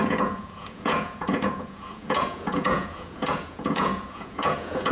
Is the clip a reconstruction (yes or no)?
yes